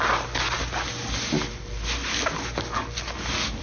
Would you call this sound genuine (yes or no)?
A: yes